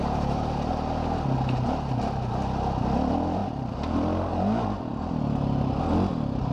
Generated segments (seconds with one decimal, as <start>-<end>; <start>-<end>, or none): 0.0-0.7